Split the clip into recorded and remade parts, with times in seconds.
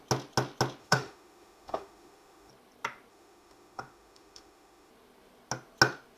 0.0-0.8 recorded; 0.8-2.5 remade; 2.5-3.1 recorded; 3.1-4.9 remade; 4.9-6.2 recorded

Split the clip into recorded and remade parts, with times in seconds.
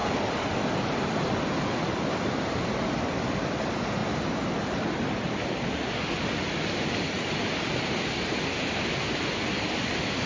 0.0-10.3 recorded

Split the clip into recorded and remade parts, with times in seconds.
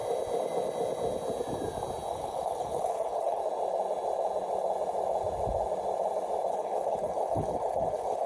0.0-2.1 recorded; 2.1-3.4 remade; 3.4-6.5 recorded; 6.5-8.3 remade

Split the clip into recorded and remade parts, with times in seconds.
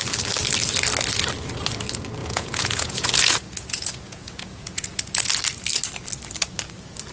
0.0-2.2 recorded; 2.2-5.3 remade; 5.3-7.1 recorded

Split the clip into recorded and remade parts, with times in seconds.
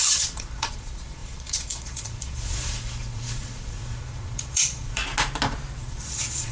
0.0-5.0 remade; 5.0-5.8 recorded; 5.8-6.5 remade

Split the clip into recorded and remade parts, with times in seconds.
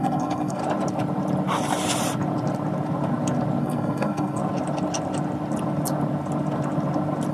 0.0-0.6 remade; 0.6-3.6 recorded; 3.6-4.4 remade; 4.4-7.3 recorded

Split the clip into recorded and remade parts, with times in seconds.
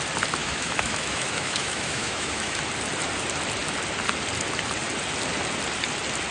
0.0-0.4 recorded; 0.4-2.6 remade; 2.6-6.3 recorded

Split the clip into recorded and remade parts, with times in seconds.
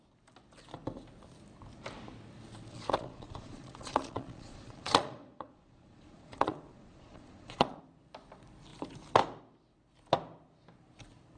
0.0-2.7 recorded; 2.7-7.8 remade; 7.8-11.4 recorded